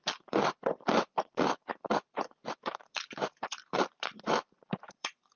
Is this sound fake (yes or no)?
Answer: yes